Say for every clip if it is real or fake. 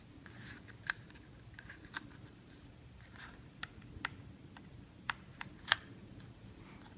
fake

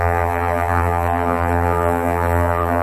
fake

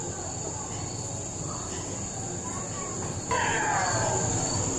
real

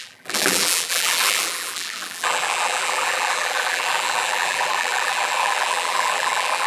fake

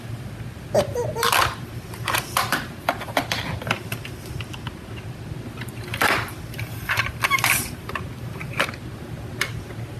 real